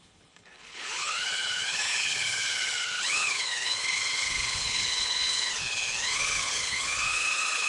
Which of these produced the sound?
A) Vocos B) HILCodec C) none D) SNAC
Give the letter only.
B